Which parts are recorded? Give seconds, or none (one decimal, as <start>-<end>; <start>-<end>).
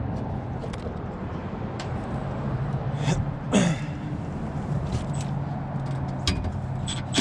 0.0-0.6; 4.9-7.2